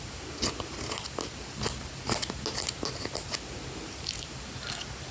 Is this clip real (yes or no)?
yes